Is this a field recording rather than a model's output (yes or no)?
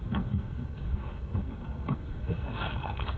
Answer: no